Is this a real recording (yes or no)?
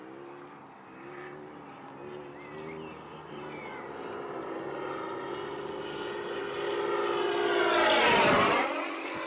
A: yes